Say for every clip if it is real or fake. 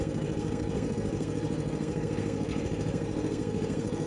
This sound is fake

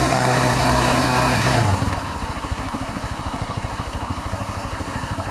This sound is fake